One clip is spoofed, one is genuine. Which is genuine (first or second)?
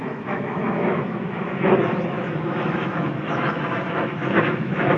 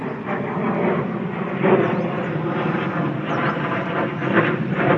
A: second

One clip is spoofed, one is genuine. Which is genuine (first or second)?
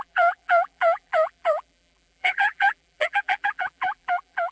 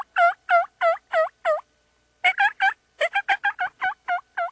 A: second